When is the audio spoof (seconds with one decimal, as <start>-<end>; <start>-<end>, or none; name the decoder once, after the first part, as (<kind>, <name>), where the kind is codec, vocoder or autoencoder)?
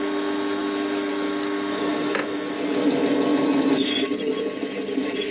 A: none